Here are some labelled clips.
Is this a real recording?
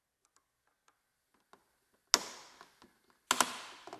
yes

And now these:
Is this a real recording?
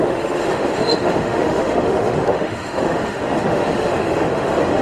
no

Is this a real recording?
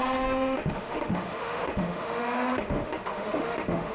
no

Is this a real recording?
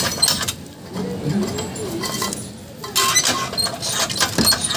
yes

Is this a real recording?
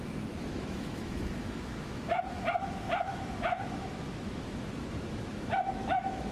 no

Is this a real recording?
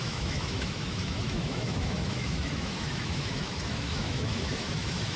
no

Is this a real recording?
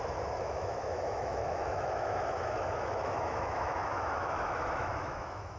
no